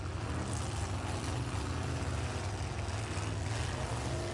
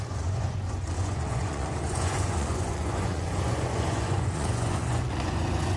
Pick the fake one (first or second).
second